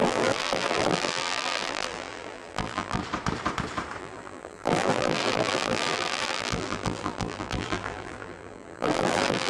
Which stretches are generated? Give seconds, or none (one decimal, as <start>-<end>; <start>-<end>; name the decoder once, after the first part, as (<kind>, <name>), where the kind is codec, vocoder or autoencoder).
0.0-3.0 (vocoder, BigVGAN v2); 4.0-9.5